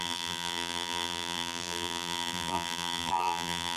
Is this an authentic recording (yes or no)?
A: no